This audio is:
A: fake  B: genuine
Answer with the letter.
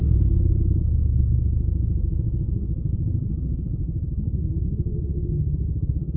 B